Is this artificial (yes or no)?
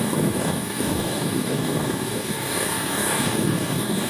yes